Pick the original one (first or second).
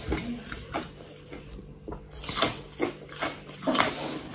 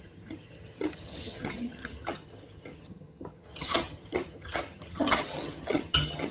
first